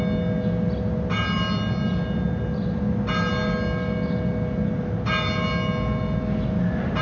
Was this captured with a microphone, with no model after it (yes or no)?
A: yes